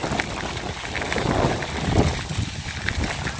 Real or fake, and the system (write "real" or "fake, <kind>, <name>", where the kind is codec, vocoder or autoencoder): real